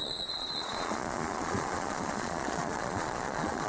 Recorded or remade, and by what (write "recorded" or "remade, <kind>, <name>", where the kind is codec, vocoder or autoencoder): remade, vocoder, Vocos